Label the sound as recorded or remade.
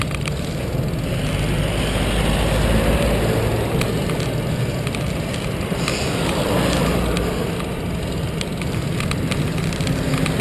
recorded